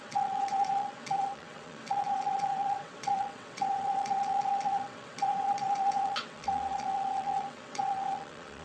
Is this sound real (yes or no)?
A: no